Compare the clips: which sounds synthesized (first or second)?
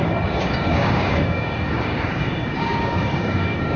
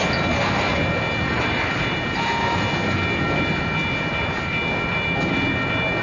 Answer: first